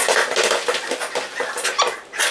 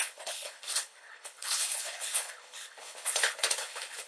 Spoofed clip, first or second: second